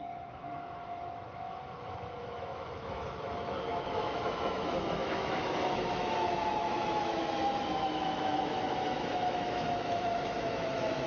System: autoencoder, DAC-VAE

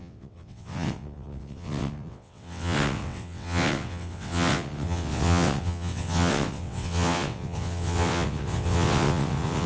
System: vocoder, WaveNeXt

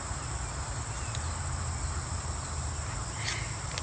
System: none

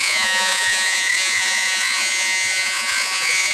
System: vocoder, Vocos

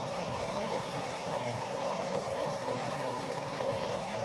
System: codec, SNAC